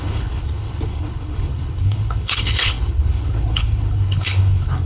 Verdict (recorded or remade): remade